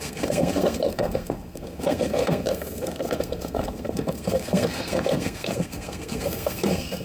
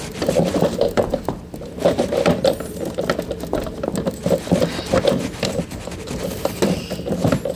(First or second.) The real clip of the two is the second